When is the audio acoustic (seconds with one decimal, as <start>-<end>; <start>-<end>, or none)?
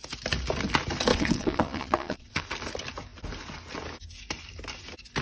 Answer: 0.0-1.1; 2.4-5.2